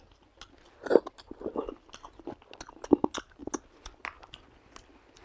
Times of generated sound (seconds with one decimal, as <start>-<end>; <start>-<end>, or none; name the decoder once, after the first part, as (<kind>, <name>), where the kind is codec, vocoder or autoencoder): none